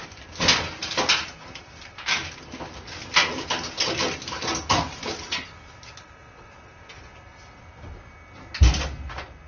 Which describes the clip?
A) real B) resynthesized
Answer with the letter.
A